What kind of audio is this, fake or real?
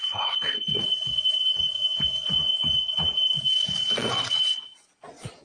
fake